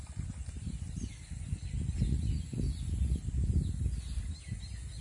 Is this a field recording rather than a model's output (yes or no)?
yes